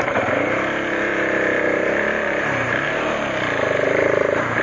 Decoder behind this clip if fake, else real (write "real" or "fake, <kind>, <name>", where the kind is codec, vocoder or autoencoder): fake, vocoder, BigVGAN v2